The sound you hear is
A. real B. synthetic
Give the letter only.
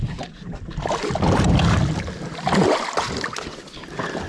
A